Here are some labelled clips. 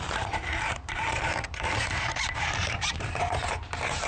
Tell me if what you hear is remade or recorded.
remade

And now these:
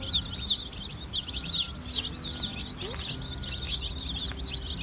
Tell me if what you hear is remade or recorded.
recorded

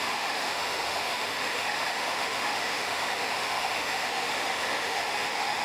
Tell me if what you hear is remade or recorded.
remade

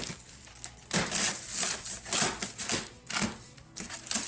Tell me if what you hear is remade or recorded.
recorded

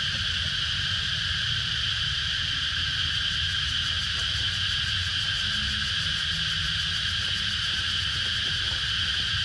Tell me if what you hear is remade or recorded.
recorded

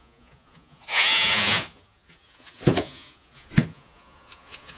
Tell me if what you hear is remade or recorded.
remade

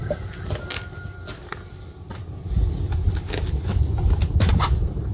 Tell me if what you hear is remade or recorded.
recorded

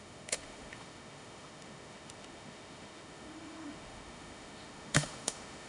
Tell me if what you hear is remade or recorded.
remade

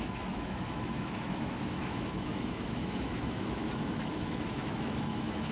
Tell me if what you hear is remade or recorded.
remade